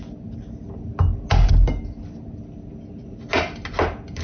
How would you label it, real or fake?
real